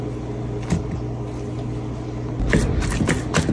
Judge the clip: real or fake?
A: real